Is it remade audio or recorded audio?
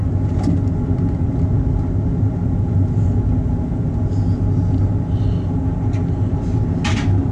recorded